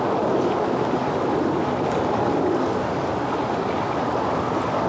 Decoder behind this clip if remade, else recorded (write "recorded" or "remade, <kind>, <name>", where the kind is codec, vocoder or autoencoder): recorded